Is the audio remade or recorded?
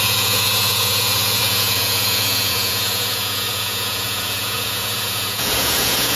remade